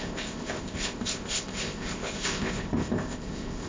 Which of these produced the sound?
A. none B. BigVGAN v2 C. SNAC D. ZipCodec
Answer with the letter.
D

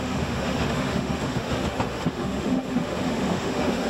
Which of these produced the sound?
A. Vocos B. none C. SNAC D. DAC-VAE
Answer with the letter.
D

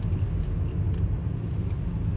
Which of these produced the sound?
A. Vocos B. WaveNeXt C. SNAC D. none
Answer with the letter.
D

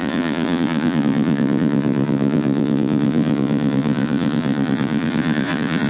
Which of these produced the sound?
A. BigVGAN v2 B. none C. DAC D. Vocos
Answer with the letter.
D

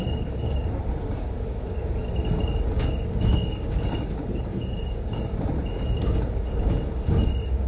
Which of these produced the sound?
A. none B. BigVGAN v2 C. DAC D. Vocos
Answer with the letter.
C